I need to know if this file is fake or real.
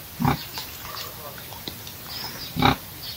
real